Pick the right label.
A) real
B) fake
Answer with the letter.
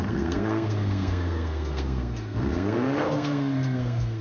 B